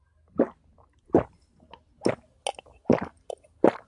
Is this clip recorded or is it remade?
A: recorded